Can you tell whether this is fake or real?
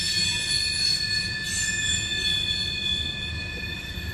real